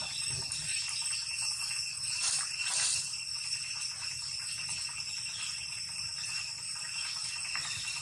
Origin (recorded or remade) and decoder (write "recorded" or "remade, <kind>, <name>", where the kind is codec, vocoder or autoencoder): recorded